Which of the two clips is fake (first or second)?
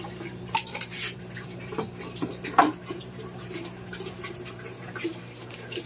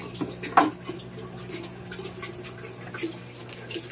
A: first